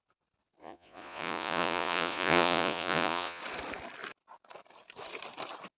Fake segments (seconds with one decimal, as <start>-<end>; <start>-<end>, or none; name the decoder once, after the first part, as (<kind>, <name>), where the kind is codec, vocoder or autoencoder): 0.6-3.4 (vocoder, Vocos)